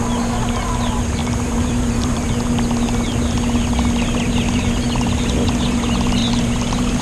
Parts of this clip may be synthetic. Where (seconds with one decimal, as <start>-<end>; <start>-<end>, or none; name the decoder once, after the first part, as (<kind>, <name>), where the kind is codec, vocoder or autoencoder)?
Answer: 1.2-2.3 (vocoder, BigVGAN v2); 6.2-7.0